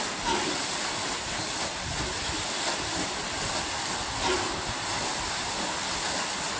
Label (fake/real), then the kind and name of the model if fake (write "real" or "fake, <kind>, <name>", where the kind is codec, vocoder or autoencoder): real